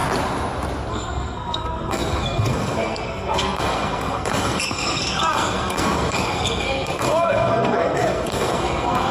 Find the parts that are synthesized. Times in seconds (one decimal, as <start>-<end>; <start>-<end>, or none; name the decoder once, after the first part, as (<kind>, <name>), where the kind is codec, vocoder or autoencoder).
0.9-9.1 (codec, SNAC)